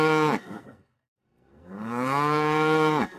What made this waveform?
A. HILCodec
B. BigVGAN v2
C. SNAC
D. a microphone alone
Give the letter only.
C